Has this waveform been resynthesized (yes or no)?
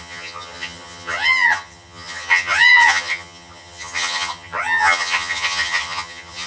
yes